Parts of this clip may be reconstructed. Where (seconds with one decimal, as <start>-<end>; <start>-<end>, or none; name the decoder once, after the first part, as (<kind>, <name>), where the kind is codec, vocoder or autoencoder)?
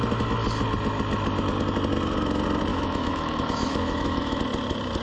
2.7-4.4 (autoencoder, DAC-VAE)